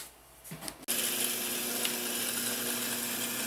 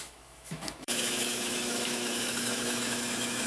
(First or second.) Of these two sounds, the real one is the first